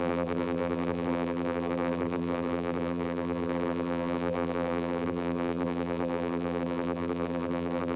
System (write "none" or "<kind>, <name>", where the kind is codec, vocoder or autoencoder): vocoder, BigVGAN v2